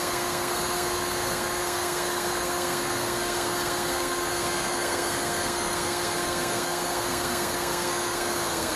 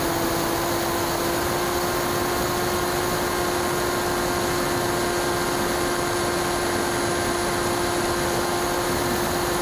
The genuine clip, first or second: second